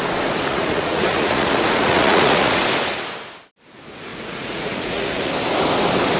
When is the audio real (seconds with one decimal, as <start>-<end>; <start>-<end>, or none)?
0.0-0.5; 2.6-4.1; 5.3-6.2